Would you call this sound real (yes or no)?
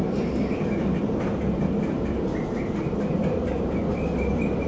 yes